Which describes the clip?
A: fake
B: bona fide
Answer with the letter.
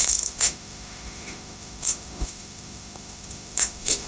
A